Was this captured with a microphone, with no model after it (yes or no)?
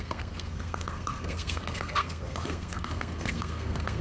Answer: no